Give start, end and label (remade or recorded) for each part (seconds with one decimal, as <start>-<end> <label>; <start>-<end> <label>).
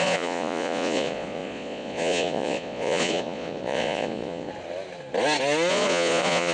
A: 0.0-4.5 remade; 4.5-5.7 recorded; 5.7-6.5 remade